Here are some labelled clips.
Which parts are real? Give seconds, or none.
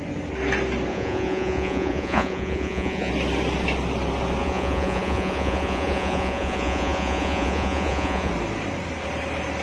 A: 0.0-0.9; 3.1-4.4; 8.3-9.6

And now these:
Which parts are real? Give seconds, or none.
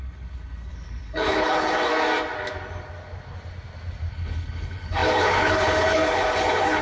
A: 1.9-4.1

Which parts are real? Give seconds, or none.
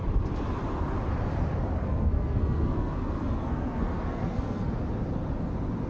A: 0.0-1.8; 4.7-5.9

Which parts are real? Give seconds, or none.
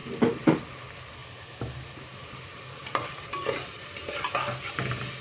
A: 0.6-2.8; 3.9-5.2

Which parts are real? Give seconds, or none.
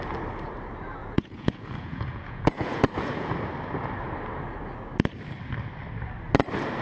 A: 0.0-1.0; 3.3-6.8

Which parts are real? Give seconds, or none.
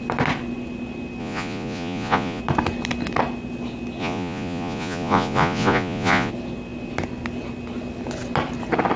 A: 0.0-1.2; 2.4-4.0; 6.3-9.0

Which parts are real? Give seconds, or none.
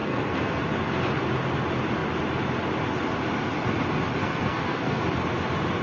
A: 0.6-4.2; 5.0-5.8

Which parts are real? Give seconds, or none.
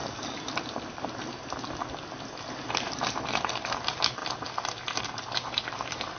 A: 0.0-2.7; 4.2-5.0